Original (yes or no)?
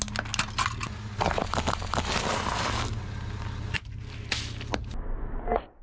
yes